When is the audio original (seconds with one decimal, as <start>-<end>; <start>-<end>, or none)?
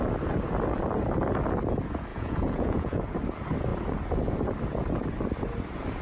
0.0-2.1; 3.0-6.0